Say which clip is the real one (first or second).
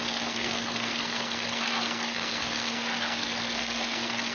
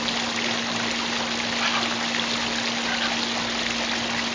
second